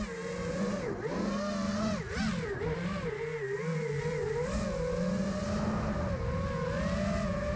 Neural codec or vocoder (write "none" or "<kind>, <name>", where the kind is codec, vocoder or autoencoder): none